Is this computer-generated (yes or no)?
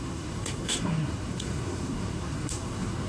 yes